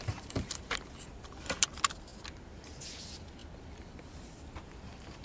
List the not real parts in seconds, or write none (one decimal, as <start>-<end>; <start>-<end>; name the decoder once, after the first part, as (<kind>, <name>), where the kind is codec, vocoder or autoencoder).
none